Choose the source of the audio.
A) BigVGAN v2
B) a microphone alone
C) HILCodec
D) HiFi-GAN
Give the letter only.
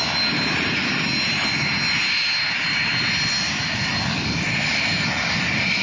B